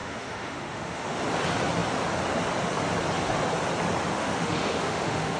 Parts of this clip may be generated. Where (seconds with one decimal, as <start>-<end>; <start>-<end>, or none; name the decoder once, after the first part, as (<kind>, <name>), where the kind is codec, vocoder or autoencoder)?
0.0-1.2 (autoencoder, DAC-VAE); 4.1-5.4